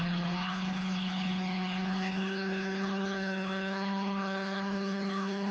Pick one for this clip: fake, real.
fake